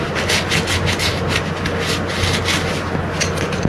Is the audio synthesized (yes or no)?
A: no